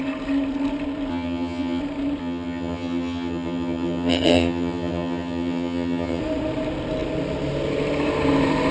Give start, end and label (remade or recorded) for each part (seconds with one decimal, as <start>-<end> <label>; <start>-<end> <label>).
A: 0.0-1.1 recorded; 1.1-1.8 remade; 1.8-2.2 recorded; 2.2-6.2 remade; 6.2-8.7 recorded